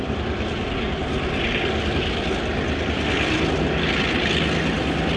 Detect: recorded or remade recorded